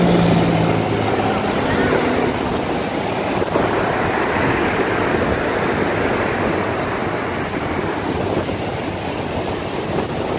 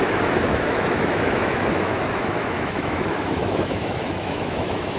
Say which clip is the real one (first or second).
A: first